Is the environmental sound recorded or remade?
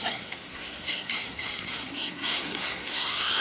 remade